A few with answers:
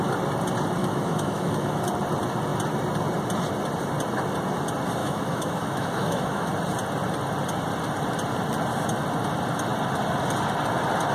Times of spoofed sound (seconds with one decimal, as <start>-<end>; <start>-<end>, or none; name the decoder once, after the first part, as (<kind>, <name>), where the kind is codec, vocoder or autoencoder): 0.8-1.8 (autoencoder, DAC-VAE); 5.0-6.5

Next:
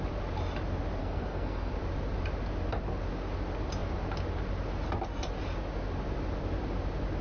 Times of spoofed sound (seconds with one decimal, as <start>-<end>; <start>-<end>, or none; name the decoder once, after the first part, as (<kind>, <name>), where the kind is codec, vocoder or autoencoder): 1.0-1.7 (codec, SNAC)

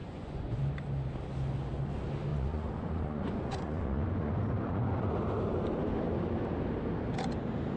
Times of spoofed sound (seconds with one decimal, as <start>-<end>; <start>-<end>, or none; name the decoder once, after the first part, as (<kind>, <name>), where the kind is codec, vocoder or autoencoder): 0.0-0.6 (vocoder, Vocos); 2.3-5.1

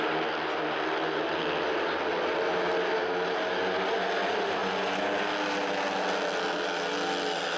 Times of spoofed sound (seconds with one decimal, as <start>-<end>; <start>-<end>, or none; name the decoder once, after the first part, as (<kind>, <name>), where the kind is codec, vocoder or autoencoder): none

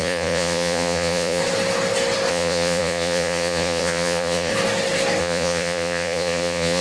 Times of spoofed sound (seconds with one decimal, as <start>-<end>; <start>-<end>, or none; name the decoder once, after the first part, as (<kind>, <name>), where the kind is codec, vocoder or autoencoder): 0.0-1.4 (vocoder, Vocos); 2.3-4.5; 5.2-6.8

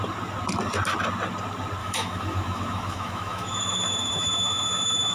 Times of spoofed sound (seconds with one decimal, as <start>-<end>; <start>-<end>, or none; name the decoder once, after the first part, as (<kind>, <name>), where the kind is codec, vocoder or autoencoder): 1.8-5.1 (autoencoder, DAC-VAE)